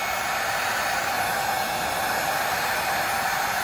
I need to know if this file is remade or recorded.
recorded